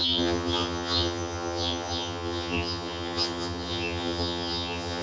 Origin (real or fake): fake